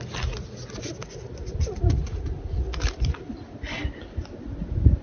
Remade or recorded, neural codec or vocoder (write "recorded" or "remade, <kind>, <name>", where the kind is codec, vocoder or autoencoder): recorded